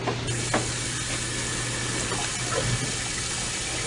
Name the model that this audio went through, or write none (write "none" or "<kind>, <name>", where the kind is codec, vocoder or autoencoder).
none